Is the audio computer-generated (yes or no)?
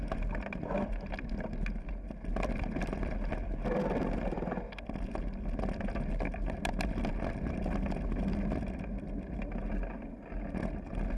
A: no